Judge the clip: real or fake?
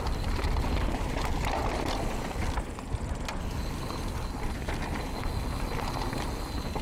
real